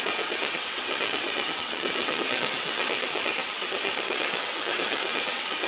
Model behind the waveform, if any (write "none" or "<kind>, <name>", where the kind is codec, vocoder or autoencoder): vocoder, WaveNeXt